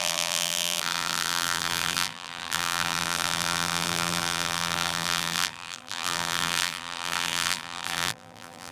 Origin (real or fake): fake